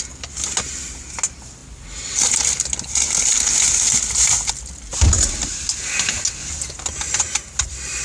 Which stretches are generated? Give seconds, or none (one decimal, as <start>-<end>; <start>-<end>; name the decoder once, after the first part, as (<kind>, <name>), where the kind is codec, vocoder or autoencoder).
4.9-5.6 (vocoder, BigVGAN v2)